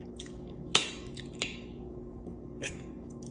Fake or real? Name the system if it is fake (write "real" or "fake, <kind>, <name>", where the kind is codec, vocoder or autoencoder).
fake, codec, DAC